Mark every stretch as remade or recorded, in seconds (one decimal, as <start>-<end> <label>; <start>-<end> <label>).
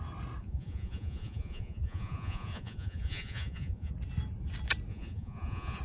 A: 0.0-0.4 recorded; 0.4-3.9 remade; 3.9-4.9 recorded; 4.9-5.8 remade